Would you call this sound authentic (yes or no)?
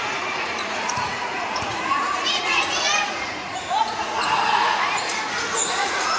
no